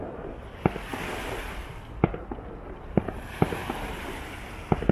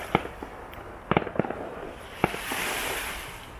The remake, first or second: second